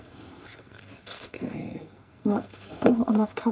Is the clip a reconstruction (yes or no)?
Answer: yes